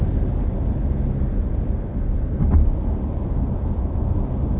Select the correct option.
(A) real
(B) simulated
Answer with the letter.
A